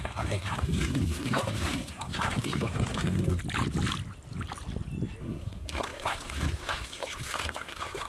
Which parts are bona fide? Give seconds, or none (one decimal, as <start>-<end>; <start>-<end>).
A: 3.4-5.2